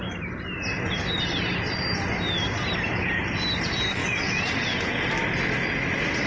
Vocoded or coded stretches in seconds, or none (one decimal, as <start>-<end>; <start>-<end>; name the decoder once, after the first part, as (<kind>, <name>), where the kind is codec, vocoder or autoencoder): 4.0-5.1 (vocoder, Vocos)

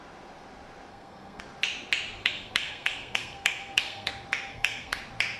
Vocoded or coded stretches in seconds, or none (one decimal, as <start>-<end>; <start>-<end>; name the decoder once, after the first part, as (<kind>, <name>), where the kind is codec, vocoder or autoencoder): 0.9-1.4 (codec, SNAC); 2.2-4.1; 4.5-5.0